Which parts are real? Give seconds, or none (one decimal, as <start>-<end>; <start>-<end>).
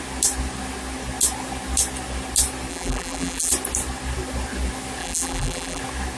0.0-2.7; 3.5-5.0; 5.8-6.2